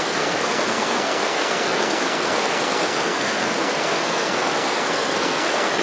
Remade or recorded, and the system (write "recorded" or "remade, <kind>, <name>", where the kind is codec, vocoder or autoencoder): remade, codec, SNAC